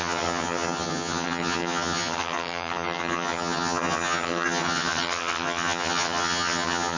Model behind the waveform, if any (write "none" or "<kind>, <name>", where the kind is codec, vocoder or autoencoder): vocoder, HiFi-GAN